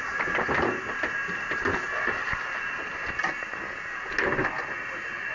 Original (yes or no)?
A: yes